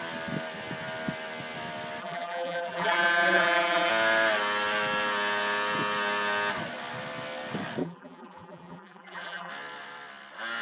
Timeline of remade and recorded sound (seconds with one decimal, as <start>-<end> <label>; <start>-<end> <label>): 0.0-2.0 recorded; 2.0-3.9 remade; 3.9-7.8 recorded; 7.8-9.5 remade; 9.5-10.6 recorded